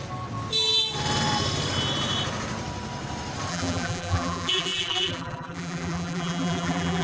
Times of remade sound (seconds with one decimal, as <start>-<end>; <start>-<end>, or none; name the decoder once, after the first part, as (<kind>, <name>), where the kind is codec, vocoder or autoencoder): 3.5-7.0 (vocoder, BigVGAN v2)